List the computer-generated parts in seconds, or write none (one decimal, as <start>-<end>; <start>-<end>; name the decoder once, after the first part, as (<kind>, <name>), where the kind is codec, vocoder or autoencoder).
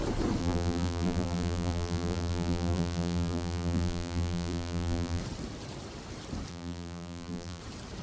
0.4-5.2 (vocoder, BigVGAN v2); 6.5-7.6